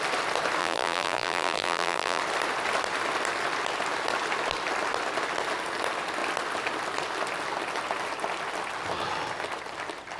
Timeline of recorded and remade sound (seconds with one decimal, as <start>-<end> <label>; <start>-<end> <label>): 0.0-0.6 recorded; 0.6-2.2 remade; 2.2-10.2 recorded